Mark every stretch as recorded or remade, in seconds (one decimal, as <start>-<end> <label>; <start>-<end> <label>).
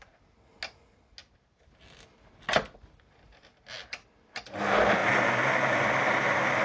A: 0.0-6.6 recorded